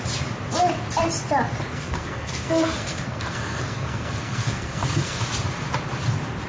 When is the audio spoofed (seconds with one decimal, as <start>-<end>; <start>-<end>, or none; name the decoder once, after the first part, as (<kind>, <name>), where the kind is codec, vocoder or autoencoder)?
1.7-5.2 (codec, SNAC)